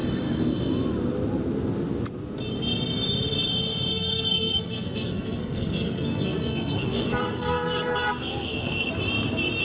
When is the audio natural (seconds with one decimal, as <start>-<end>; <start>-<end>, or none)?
0.0-3.9; 8.9-9.6